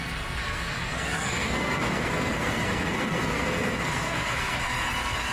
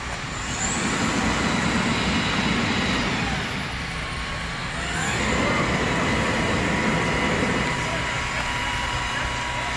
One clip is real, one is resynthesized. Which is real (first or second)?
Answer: second